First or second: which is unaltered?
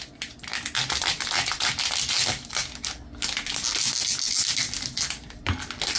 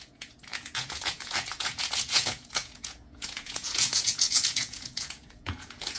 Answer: first